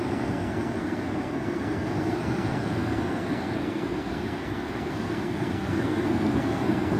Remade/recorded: remade